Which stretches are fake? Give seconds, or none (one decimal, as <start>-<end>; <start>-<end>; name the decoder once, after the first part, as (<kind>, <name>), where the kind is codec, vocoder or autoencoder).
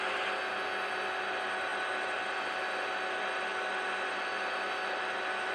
none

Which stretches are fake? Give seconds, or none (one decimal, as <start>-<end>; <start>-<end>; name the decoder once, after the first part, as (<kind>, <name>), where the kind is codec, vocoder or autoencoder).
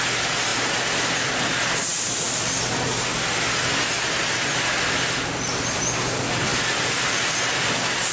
1.9-2.9 (vocoder, BigVGAN v2); 6.5-7.3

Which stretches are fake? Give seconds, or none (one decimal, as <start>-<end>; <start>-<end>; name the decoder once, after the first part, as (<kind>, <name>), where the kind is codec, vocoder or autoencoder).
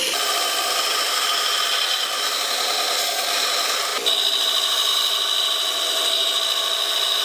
none